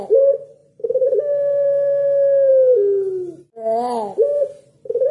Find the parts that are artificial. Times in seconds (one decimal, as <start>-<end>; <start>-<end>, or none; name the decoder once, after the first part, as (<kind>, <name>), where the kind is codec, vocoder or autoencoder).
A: none